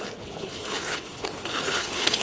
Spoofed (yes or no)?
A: yes